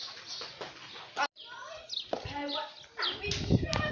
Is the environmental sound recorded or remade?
recorded